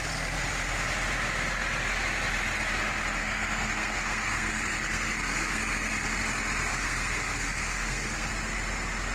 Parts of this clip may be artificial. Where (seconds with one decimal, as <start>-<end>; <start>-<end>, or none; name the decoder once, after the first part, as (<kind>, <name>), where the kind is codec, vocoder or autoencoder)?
3.2-6.2 (codec, SNAC); 6.7-8.3